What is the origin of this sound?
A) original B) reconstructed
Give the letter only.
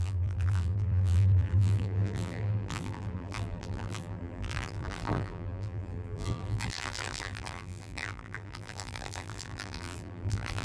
B